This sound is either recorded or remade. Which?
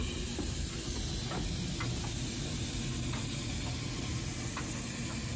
recorded